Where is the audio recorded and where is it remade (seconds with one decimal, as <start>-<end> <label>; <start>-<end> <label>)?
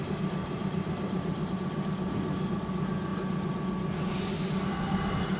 0.0-0.4 recorded; 0.4-1.5 remade; 1.5-5.4 recorded